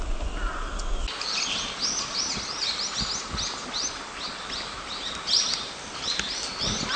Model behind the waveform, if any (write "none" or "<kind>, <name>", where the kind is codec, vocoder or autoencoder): none